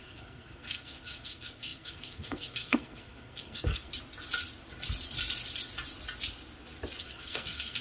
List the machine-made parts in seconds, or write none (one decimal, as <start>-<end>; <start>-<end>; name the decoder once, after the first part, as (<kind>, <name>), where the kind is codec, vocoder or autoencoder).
0.0-3.9 (codec, SNAC); 7.0-7.8